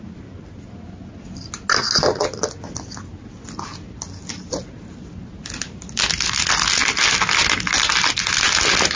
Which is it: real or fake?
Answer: real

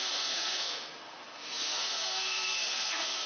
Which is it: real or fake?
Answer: fake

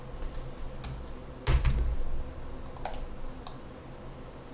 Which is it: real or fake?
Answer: real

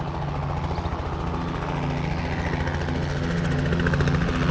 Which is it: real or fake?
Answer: real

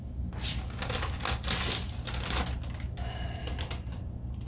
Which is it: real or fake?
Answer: real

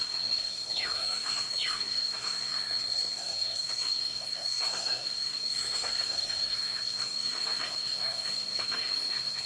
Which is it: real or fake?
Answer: fake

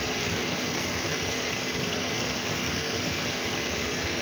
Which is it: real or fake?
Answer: fake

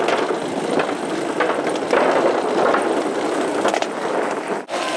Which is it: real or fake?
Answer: real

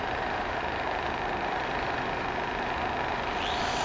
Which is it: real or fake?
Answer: real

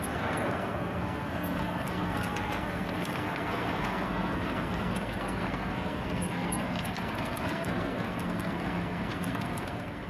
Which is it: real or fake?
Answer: fake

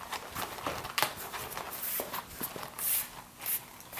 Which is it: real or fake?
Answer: real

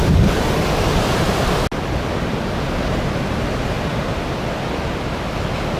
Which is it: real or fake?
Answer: real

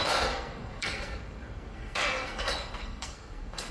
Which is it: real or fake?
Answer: fake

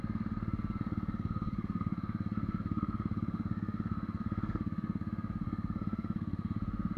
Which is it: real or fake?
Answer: fake